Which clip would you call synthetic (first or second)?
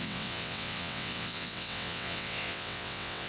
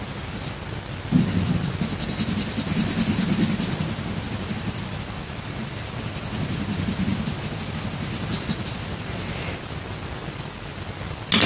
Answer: first